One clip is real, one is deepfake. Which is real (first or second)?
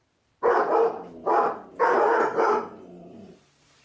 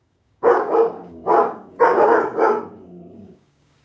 first